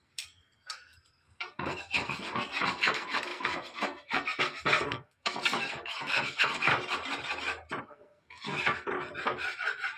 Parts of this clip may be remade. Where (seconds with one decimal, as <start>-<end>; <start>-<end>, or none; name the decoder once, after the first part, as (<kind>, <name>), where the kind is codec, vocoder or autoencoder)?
0.0-6.7 (codec, SNAC); 7.8-8.9

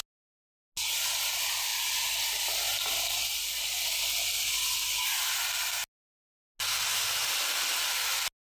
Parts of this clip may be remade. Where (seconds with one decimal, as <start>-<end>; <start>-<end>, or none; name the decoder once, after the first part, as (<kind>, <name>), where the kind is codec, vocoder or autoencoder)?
none

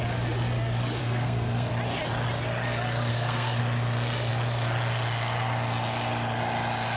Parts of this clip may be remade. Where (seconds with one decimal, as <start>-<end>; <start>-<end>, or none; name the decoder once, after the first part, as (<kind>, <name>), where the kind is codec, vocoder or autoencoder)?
1.0-1.7 (codec, SNAC); 3.1-3.6

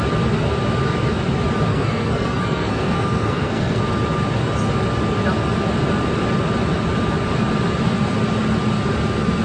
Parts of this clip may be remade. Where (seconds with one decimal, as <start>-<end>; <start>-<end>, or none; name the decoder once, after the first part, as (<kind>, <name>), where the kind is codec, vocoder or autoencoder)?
1.7-3.8 (codec, SNAC)

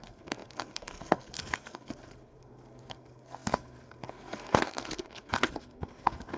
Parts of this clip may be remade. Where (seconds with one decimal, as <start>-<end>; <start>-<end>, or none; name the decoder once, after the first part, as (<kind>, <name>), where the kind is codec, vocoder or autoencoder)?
0.0-6.4 (codec, SNAC)